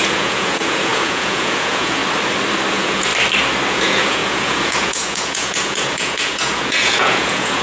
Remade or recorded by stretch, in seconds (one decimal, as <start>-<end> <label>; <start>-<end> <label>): 0.0-2.0 remade; 2.0-2.7 recorded; 2.7-3.1 remade; 3.1-3.7 recorded; 3.7-7.6 remade

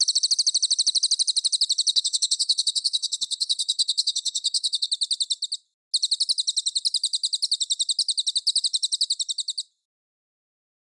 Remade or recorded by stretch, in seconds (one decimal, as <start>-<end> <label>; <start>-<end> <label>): 0.0-1.9 recorded; 1.9-4.9 remade; 4.9-11.0 recorded